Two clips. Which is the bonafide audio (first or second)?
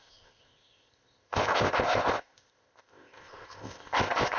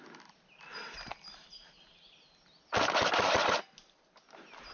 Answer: second